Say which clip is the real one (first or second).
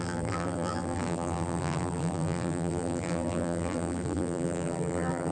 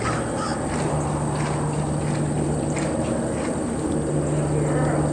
second